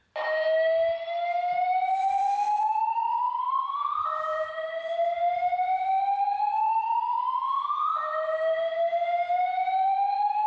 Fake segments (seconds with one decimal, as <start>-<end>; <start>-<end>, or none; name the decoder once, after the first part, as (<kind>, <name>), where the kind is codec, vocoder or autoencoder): 3.4-4.0 (codec, SNAC)